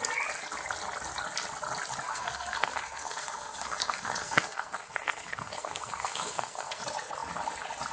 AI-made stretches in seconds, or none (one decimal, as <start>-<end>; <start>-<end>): 2.1-6.8